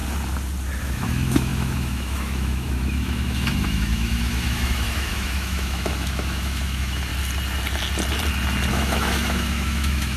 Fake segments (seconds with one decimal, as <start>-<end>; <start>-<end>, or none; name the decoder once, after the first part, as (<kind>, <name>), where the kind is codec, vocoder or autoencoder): 0.8-7.1 (autoencoder, DAC-VAE); 8.7-10.2